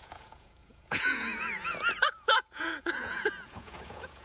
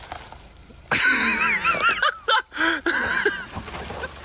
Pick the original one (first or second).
second